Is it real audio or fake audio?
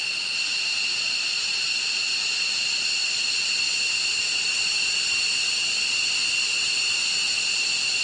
real